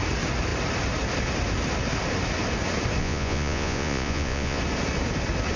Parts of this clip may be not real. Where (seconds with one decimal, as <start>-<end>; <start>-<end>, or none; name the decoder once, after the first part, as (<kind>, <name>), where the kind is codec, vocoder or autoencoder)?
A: 3.0-4.6 (vocoder, Vocos)